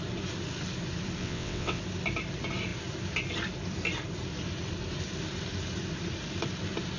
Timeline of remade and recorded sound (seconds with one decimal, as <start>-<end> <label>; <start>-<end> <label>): 0.0-1.2 recorded; 1.2-1.8 remade; 1.8-7.0 recorded

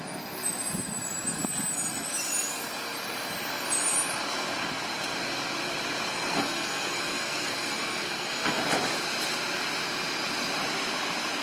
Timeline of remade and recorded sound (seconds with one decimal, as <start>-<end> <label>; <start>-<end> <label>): 0.0-6.1 recorded; 6.1-8.6 remade; 8.6-11.4 recorded

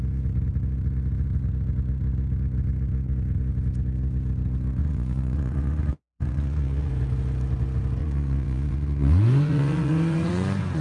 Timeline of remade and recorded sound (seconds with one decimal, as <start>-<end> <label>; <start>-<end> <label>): 0.0-4.8 recorded; 4.8-6.9 remade; 6.9-8.0 recorded; 8.0-10.8 remade

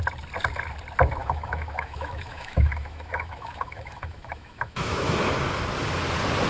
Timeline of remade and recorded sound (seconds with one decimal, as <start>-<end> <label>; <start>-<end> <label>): 0.0-1.2 recorded; 1.2-5.1 remade; 5.1-6.5 recorded

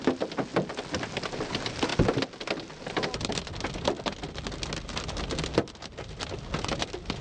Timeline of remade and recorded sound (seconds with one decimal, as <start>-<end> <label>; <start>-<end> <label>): 0.0-7.2 recorded

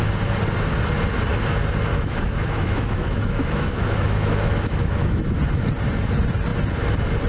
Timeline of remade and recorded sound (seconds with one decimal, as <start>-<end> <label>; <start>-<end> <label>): 0.0-1.9 recorded; 1.9-5.2 remade; 5.2-7.3 recorded

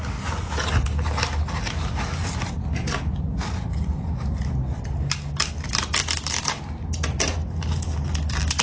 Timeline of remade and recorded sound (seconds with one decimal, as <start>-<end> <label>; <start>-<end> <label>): 0.0-8.6 recorded

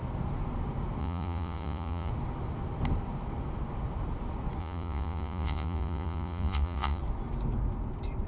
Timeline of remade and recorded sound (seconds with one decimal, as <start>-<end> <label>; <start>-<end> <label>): 0.0-1.0 recorded; 1.0-2.1 remade; 2.1-4.6 recorded; 4.6-7.0 remade; 7.0-8.3 recorded